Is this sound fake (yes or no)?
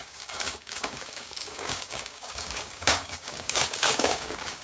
yes